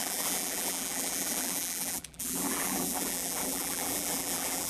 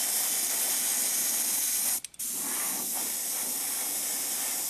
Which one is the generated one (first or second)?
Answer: first